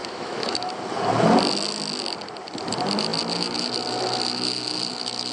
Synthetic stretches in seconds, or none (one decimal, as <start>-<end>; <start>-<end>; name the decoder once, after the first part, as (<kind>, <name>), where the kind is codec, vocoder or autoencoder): 0.0-0.7 (autoencoder, DAC-VAE)